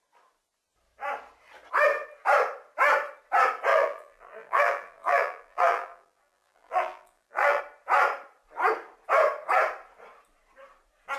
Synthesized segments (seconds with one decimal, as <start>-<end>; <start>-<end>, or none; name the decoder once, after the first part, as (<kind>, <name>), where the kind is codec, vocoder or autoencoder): 3.7-7.6 (vocoder, BigVGAN v2)